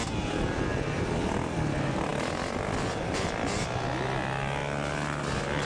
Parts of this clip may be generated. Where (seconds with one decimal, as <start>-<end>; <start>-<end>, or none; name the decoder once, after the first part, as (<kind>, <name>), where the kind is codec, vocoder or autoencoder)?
none